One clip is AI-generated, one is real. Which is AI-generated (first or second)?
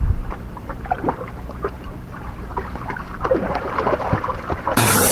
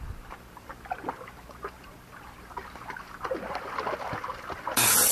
first